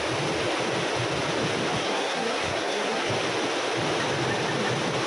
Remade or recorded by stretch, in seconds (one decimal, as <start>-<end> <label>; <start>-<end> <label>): 0.0-1.8 recorded; 1.8-3.1 remade; 3.1-5.1 recorded